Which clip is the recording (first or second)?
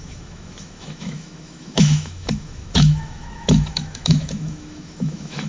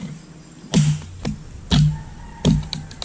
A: second